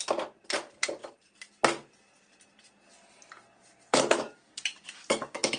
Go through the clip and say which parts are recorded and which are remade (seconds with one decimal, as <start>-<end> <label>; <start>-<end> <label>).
0.0-3.9 recorded; 3.9-5.6 remade